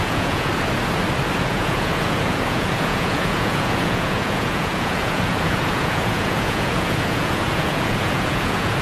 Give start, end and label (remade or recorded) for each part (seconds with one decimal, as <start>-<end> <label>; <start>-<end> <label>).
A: 0.0-0.5 remade; 0.5-1.5 recorded; 1.5-8.8 remade